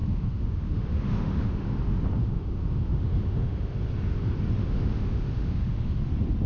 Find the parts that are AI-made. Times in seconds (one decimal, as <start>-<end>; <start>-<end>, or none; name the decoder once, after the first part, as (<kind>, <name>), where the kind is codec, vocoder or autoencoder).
0.0-1.8 (autoencoder, DAC-VAE); 2.2-3.7; 4.6-6.0